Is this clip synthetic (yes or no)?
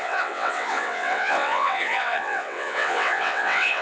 yes